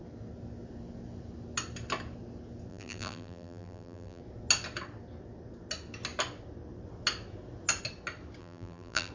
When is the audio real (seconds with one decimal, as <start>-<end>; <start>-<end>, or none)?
0.0-2.7; 4.2-8.4